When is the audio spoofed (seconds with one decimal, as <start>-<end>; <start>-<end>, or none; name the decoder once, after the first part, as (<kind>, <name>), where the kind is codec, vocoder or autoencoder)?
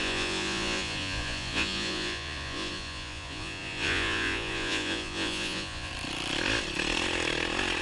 0.0-5.9 (vocoder, Vocos)